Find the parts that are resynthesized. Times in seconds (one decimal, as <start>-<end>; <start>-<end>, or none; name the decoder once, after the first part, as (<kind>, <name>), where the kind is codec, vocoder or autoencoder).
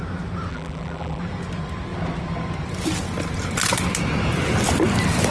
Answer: 0.5-1.2 (vocoder, BigVGAN v2)